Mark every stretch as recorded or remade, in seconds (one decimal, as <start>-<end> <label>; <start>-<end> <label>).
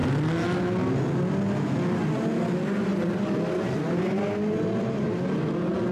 0.0-5.9 recorded